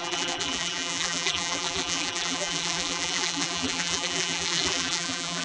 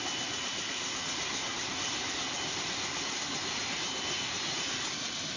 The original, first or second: second